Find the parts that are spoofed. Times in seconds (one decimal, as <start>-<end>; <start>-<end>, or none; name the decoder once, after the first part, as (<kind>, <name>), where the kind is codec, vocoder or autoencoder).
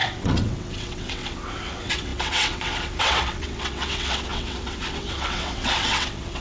0.0-6.4 (vocoder, WaveNeXt)